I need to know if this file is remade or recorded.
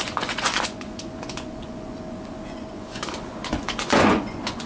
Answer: remade